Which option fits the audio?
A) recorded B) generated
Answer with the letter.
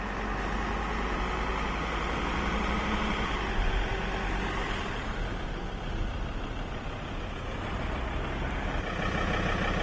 A